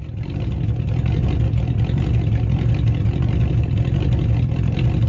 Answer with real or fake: real